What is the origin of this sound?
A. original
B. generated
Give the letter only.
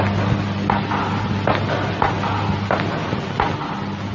A